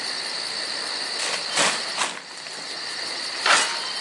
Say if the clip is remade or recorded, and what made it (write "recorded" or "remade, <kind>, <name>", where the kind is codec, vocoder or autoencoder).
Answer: recorded